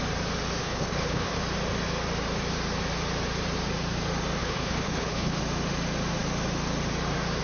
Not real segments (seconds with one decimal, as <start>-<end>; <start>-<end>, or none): 0.6-1.4; 4.4-5.4